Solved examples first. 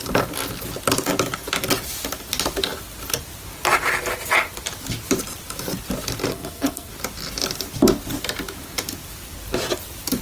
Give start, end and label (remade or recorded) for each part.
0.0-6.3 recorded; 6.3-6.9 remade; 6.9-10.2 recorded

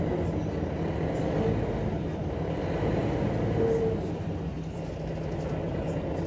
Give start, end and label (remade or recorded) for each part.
0.0-6.3 recorded